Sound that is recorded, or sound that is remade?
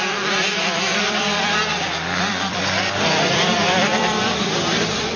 remade